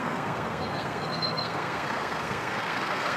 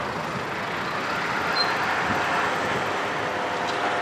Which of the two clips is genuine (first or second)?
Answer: second